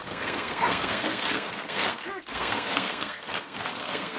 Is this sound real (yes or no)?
no